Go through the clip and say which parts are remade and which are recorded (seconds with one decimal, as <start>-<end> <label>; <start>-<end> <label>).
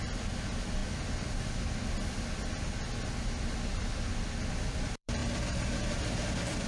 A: 0.0-0.8 remade; 0.8-4.5 recorded; 4.5-6.7 remade